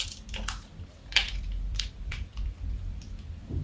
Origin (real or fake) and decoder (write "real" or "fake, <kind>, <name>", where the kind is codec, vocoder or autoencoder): fake, vocoder, BigVGAN v2